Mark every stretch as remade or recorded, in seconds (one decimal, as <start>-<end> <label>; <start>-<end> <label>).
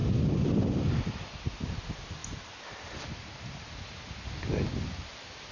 0.0-5.5 recorded